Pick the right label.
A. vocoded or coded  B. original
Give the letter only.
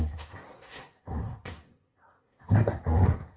A